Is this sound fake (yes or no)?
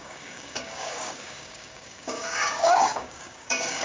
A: yes